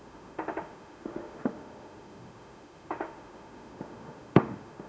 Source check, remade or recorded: remade